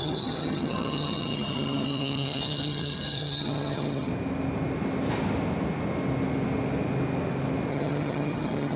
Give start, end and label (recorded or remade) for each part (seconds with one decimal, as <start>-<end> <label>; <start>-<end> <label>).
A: 0.0-4.1 remade; 4.1-7.7 recorded; 7.7-8.8 remade